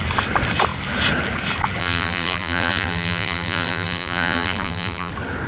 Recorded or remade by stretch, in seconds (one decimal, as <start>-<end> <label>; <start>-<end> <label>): 0.0-1.8 recorded; 1.8-5.1 remade; 5.1-5.5 recorded